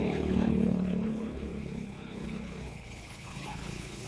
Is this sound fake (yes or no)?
yes